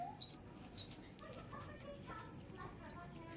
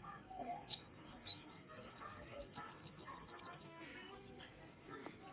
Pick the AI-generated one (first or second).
second